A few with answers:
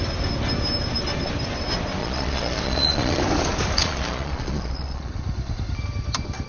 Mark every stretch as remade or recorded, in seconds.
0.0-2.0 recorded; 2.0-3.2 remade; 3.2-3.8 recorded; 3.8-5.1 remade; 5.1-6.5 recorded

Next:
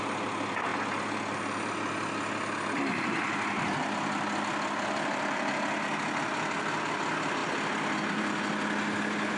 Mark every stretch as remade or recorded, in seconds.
0.0-9.4 recorded

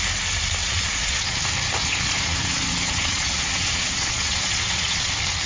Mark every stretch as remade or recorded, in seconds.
0.0-0.6 recorded; 0.6-1.4 remade; 1.4-1.8 recorded; 1.8-5.1 remade; 5.1-5.5 recorded

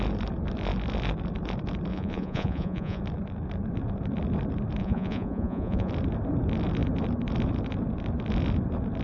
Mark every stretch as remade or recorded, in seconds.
0.0-1.9 recorded; 1.9-3.0 remade; 3.0-4.8 recorded; 4.8-5.9 remade; 5.9-9.0 recorded

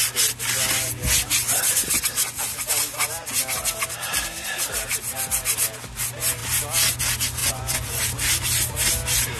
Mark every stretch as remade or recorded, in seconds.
0.0-7.4 recorded; 7.4-8.0 remade; 8.0-9.4 recorded